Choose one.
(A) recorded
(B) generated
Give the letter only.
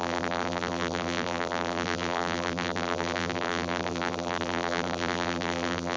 B